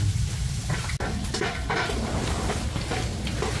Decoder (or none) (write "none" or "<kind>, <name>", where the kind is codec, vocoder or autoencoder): none